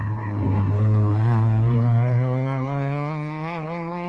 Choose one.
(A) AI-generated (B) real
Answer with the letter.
A